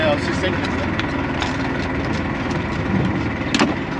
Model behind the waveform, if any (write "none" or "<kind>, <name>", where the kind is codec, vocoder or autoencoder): none